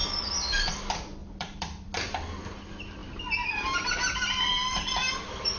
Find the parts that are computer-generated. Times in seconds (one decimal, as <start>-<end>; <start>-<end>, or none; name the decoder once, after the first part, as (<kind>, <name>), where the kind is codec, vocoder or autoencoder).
0.0-0.7 (vocoder, BigVGAN v2); 1.2-1.9